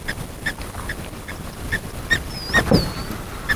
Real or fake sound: real